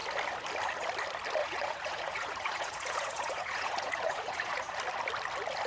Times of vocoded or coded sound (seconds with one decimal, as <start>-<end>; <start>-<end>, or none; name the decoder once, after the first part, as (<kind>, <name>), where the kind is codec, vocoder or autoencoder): 1.4-4.8 (vocoder, Vocos)